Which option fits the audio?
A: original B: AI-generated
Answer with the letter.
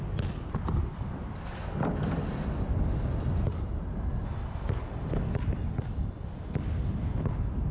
A